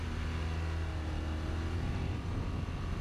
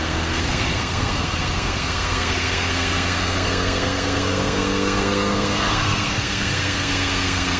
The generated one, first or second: second